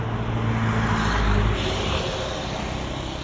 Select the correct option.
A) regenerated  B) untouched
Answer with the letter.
B